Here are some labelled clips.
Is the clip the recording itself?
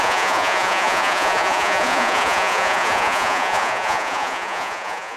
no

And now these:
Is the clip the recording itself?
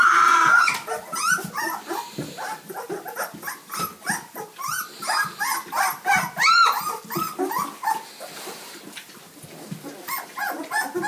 yes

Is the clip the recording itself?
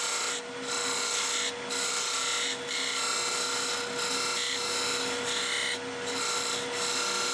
yes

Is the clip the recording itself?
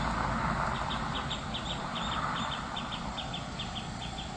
yes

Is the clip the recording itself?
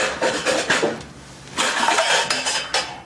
yes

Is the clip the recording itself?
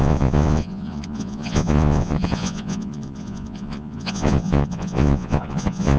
no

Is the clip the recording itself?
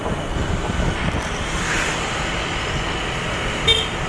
yes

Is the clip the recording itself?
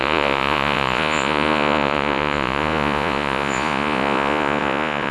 no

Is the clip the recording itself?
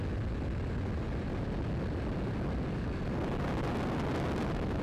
yes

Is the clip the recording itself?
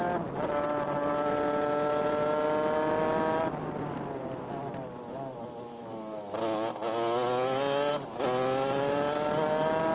yes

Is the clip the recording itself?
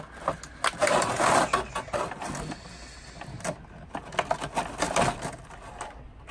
yes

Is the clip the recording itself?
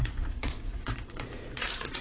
no